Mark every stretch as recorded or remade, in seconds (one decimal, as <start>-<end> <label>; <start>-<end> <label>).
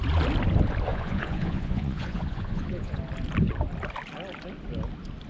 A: 0.0-0.9 recorded; 0.9-3.0 remade; 3.0-5.3 recorded